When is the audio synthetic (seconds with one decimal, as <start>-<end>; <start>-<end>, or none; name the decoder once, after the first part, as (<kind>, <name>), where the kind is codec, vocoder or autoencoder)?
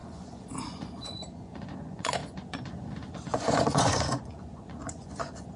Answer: 0.0-5.6 (vocoder, Vocos)